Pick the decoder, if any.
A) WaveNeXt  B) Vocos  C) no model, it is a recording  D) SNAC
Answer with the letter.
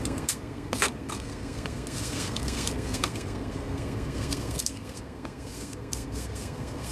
D